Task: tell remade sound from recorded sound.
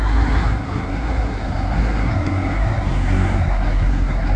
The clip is remade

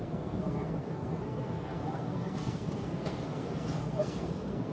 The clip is remade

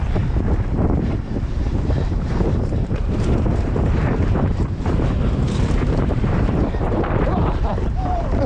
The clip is remade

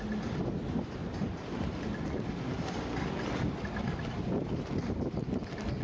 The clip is recorded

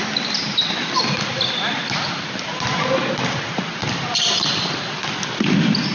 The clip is recorded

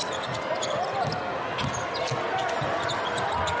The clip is recorded